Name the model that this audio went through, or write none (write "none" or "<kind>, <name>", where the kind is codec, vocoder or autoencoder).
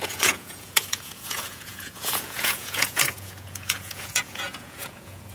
vocoder, Vocos